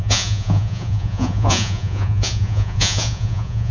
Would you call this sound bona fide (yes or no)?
no